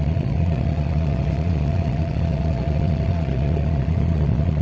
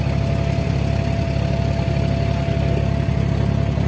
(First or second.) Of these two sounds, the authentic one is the second